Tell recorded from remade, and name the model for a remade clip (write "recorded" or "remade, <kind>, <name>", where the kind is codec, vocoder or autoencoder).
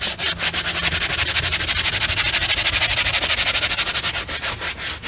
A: recorded